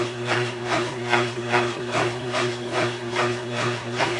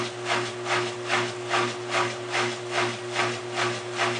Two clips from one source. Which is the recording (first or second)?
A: second